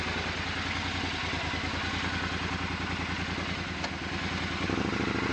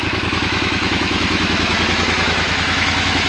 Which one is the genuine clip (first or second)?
first